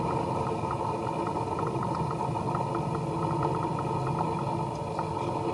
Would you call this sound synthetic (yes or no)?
no